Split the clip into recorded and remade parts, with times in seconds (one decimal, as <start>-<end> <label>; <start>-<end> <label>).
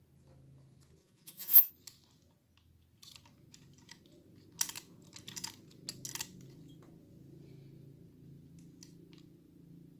0.0-1.0 recorded; 1.0-1.7 remade; 1.7-10.0 recorded